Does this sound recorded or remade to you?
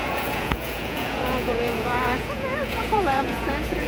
remade